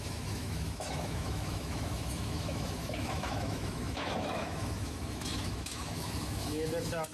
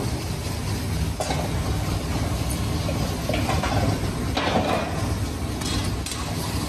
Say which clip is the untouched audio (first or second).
second